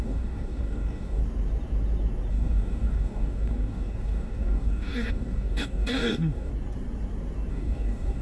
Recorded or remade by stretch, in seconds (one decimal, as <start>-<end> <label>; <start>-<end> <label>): 0.0-1.2 remade; 1.2-2.3 recorded; 2.3-6.5 remade; 6.5-7.5 recorded; 7.5-8.2 remade